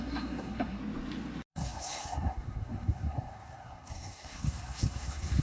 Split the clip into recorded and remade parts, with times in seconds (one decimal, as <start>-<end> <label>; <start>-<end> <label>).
0.0-0.8 remade; 0.8-1.5 recorded; 1.5-5.4 remade